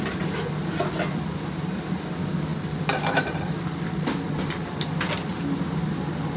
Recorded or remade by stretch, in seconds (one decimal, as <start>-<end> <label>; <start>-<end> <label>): 0.0-6.4 recorded